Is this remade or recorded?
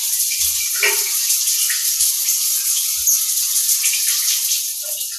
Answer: recorded